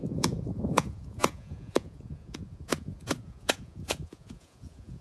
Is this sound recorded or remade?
remade